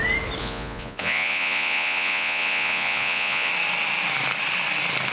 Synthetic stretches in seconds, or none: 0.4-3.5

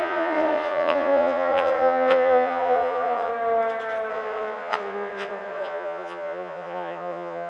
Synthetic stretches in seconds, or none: 0.0-3.3; 4.1-7.5

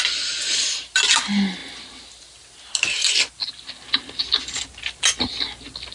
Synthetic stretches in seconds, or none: none

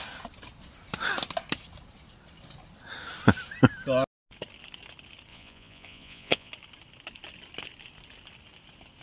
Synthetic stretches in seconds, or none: 5.3-6.5